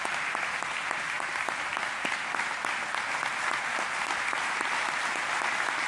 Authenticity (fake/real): real